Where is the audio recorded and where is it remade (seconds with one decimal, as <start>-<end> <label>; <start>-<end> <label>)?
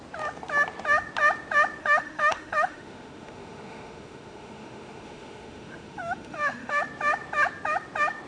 0.0-1.8 recorded; 1.8-6.8 remade; 6.8-8.3 recorded